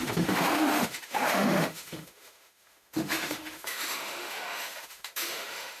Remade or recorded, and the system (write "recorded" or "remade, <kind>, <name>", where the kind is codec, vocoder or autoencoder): remade, autoencoder, DAC-VAE